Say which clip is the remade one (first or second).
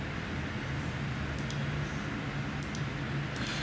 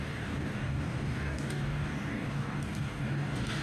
second